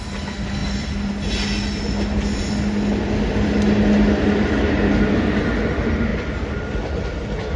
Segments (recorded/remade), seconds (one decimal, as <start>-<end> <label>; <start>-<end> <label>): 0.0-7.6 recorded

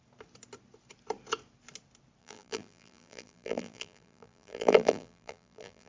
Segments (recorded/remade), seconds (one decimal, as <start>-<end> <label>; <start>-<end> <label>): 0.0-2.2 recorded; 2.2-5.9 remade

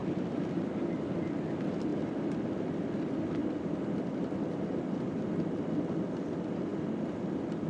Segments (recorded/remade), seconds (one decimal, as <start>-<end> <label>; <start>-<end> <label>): 0.0-1.1 remade; 1.1-7.7 recorded

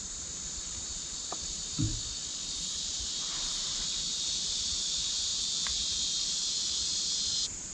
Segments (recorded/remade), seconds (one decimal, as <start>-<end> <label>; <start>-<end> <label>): 0.0-1.9 remade; 1.9-2.6 recorded; 2.6-7.7 remade